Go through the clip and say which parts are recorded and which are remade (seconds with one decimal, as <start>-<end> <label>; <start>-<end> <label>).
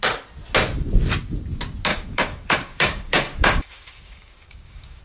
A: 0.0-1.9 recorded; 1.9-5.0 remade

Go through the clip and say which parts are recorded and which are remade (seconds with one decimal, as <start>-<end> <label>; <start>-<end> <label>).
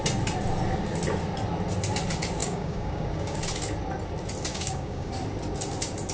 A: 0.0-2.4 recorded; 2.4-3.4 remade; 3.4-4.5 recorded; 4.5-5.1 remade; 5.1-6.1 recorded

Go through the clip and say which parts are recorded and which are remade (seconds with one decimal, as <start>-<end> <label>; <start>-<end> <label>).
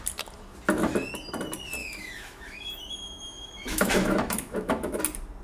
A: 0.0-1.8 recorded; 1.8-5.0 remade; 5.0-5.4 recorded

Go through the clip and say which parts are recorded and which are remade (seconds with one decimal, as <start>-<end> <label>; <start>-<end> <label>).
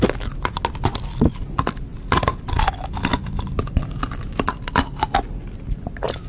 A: 0.0-6.3 recorded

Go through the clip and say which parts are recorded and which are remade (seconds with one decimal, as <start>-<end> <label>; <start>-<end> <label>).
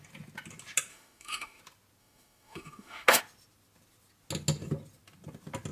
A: 0.0-0.9 recorded; 0.9-1.6 remade; 1.6-2.0 recorded; 2.0-3.2 remade; 3.2-5.7 recorded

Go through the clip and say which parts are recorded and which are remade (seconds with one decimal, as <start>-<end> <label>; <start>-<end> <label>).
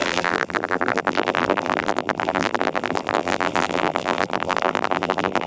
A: 0.0-5.5 remade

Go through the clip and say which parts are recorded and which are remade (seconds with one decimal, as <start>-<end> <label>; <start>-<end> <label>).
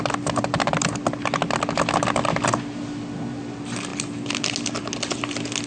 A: 0.0-5.7 recorded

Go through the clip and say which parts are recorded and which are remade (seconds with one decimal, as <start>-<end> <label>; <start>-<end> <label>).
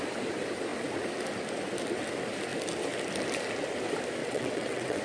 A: 0.0-4.2 recorded; 4.2-5.0 remade